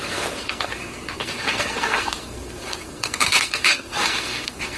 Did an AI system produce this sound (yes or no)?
yes